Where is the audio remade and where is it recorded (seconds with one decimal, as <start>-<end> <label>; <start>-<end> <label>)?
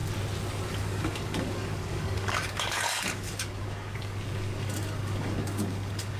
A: 0.0-0.7 recorded; 0.7-6.2 remade